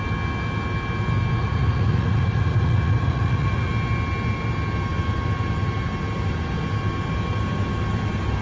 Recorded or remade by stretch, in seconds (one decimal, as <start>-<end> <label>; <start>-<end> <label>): 0.0-1.4 recorded; 1.4-3.7 remade; 3.7-8.4 recorded